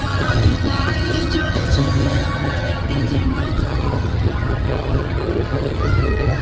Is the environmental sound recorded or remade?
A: remade